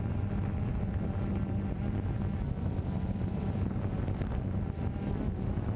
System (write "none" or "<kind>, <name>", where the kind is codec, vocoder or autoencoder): none